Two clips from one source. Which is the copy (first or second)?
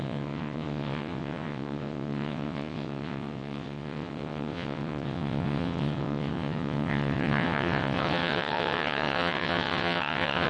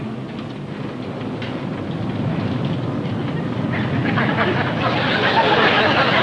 first